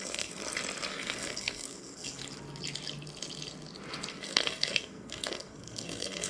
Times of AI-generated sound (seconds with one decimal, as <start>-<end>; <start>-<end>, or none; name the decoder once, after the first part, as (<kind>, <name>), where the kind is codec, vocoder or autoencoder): 0.0-0.4 (codec, SNAC); 0.9-2.2; 4.1-6.3